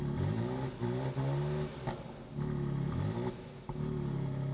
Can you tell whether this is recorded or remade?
recorded